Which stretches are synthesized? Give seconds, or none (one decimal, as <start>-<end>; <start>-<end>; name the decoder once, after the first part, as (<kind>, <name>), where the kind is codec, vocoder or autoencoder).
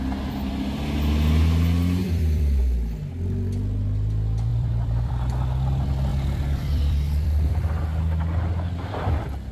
2.0-2.6 (vocoder, BigVGAN v2); 4.5-5.1; 6.1-7.8